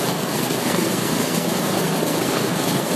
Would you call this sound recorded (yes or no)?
no